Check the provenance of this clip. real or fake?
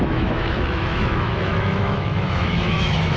fake